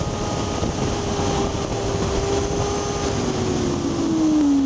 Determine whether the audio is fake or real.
real